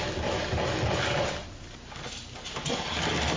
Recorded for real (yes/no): yes